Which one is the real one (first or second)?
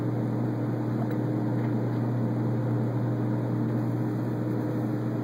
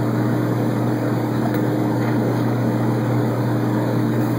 first